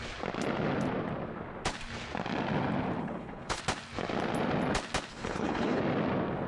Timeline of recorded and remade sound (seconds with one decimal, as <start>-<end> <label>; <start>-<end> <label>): 0.0-3.0 recorded; 3.0-3.6 remade; 3.6-5.1 recorded; 5.1-5.8 remade; 5.8-6.5 recorded